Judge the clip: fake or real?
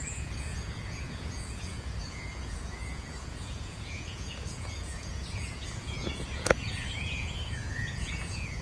fake